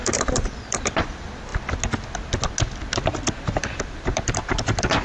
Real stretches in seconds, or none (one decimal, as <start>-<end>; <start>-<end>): 1.5-3.4